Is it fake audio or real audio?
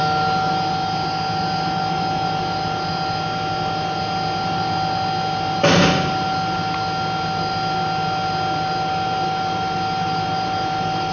real